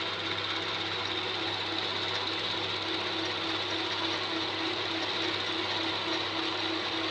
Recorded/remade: recorded